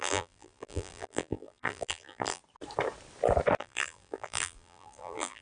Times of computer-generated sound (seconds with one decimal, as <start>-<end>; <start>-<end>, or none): 0.0-2.4; 3.6-5.4